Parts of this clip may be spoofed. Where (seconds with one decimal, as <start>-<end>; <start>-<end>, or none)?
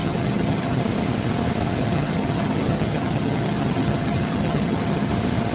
0.0-0.8; 1.8-5.1